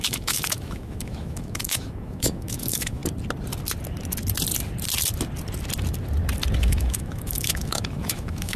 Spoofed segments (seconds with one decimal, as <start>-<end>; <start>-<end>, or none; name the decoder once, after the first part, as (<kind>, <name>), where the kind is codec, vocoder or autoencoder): 0.0-3.0 (autoencoder, DAC-VAE); 6.6-8.6